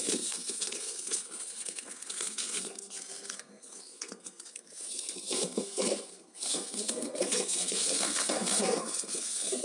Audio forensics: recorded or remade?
remade